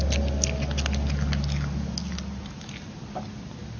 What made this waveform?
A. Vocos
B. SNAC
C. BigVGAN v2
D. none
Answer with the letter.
D